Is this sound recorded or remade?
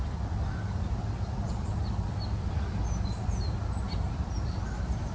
recorded